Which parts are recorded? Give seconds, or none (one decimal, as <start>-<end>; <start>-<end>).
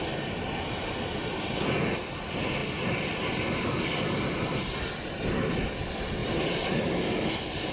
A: 0.0-7.7